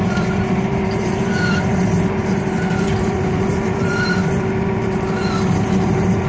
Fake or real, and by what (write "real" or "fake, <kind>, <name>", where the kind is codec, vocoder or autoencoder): fake, vocoder, BigVGAN v2